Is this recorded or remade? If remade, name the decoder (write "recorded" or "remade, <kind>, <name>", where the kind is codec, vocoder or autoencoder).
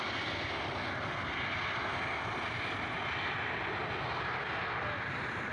recorded